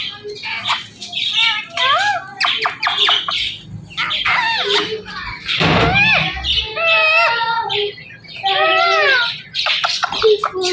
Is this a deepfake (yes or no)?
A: no